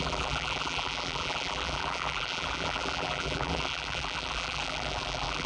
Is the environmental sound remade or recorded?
remade